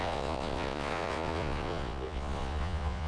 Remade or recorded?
remade